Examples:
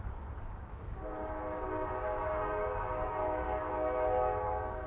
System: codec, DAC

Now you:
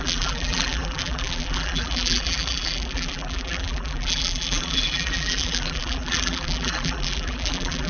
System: vocoder, BigVGAN v2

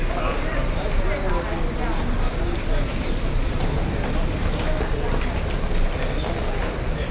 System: none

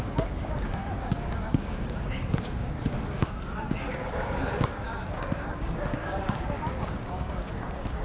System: codec, DAC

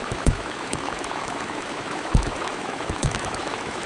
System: autoencoder, DAC-VAE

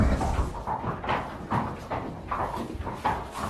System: none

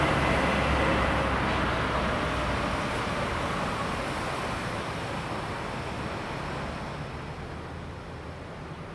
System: none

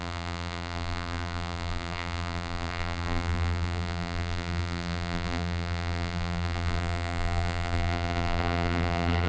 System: vocoder, BigVGAN v2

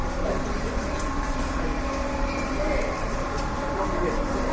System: vocoder, BigVGAN v2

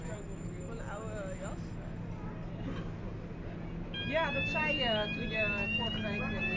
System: none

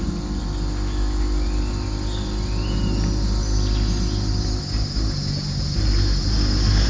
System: none